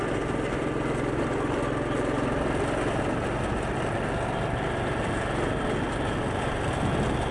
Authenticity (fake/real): real